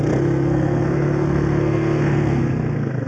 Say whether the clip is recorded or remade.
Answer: remade